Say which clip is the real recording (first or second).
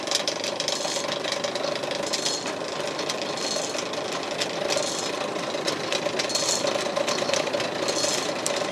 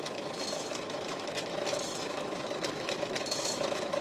first